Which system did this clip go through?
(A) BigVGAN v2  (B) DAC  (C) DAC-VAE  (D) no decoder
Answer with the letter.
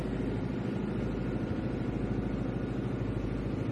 D